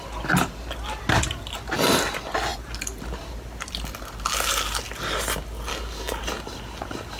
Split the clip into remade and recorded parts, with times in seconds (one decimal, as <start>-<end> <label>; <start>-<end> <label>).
0.0-5.7 recorded; 5.7-6.2 remade; 6.2-7.2 recorded